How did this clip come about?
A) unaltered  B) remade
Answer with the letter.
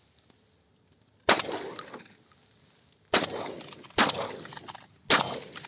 A